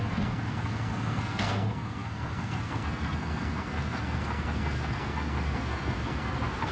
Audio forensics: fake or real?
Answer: fake